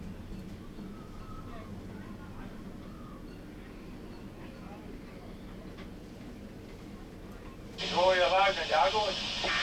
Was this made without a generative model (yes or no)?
yes